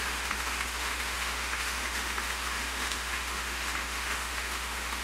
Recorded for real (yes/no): no